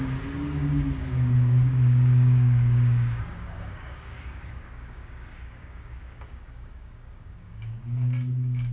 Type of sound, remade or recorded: remade